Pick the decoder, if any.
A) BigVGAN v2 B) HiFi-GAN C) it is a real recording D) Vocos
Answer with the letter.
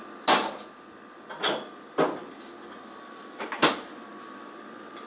C